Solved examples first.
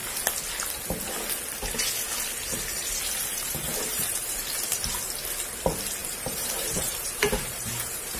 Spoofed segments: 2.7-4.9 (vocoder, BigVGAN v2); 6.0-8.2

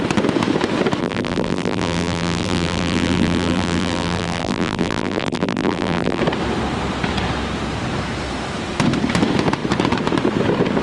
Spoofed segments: 1.0-6.2 (vocoder, BigVGAN v2)

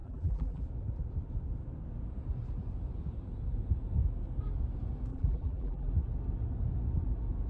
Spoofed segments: 0.0-0.6 (vocoder, BigVGAN v2); 5.1-5.9

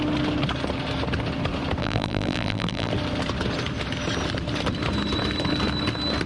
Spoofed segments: 1.8-2.9 (vocoder, BigVGAN v2)